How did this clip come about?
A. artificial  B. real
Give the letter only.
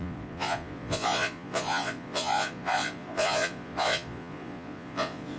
A